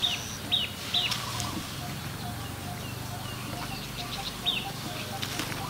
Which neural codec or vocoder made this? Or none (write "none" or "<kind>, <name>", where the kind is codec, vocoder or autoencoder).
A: none